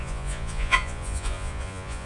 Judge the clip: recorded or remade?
remade